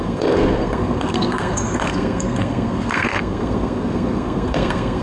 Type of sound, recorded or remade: remade